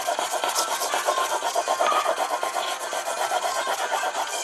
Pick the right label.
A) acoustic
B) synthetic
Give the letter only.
A